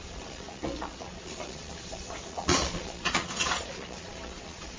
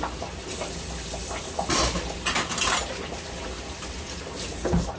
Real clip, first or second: second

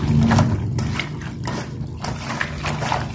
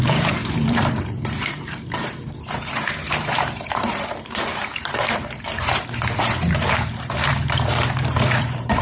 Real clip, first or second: first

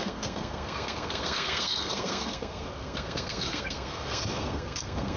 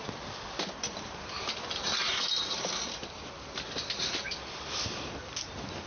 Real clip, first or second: second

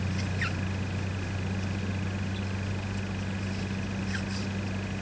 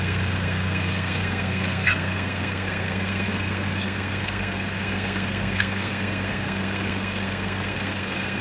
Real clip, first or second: first